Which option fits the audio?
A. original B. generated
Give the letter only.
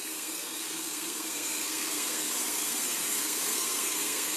B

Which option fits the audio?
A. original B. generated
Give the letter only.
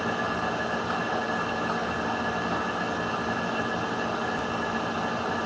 A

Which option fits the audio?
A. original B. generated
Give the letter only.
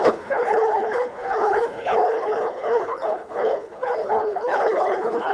B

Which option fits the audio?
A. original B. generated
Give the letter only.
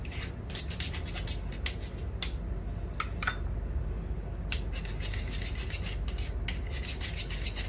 A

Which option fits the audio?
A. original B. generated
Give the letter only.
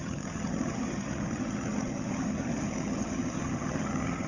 B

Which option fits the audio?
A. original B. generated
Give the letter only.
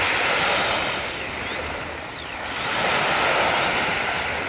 A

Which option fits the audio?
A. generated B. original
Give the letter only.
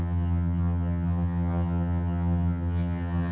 A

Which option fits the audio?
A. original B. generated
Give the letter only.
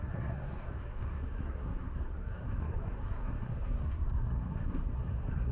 B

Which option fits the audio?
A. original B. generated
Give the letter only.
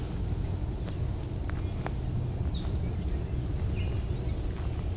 A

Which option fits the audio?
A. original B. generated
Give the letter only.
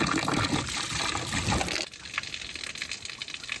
A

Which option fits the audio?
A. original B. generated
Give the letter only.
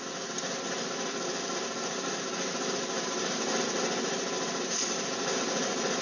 A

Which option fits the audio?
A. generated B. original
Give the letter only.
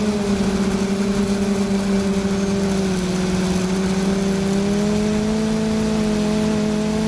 B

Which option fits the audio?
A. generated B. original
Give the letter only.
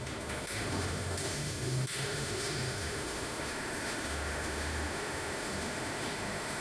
A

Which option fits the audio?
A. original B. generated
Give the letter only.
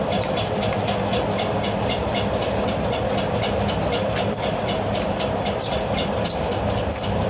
B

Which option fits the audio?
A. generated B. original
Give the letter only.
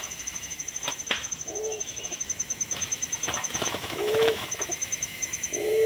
A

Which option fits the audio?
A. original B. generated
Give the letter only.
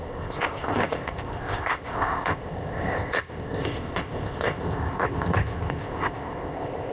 B